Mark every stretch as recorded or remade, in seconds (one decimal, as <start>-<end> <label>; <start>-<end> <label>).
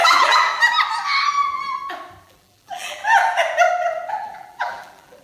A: 0.0-0.5 remade; 0.5-2.2 recorded; 2.2-3.0 remade; 3.0-4.1 recorded; 4.1-5.2 remade